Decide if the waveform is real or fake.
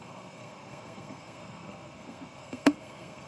fake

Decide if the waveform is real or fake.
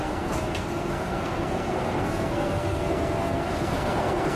fake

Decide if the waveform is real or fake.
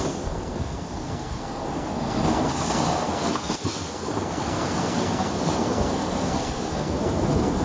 fake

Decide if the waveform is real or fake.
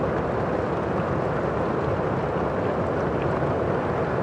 real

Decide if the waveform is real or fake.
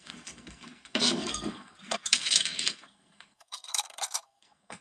fake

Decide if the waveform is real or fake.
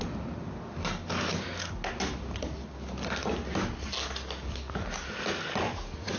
real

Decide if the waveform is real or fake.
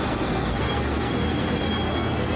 fake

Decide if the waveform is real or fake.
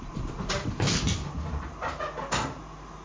real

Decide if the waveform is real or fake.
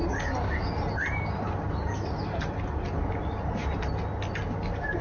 real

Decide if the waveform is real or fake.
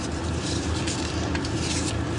real